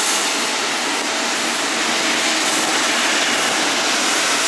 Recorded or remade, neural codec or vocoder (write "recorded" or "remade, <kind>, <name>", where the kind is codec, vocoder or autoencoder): recorded